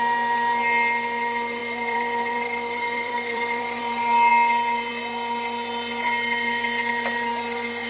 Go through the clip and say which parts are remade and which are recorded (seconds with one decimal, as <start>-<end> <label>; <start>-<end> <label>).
0.0-1.6 recorded; 1.6-3.8 remade; 3.8-7.9 recorded